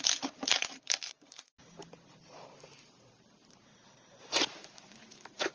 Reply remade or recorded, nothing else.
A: remade